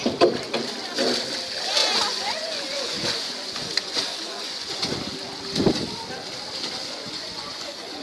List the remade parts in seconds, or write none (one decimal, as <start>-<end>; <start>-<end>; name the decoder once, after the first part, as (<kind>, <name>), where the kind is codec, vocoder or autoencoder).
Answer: 1.8-5.0 (vocoder, Vocos); 6.8-8.0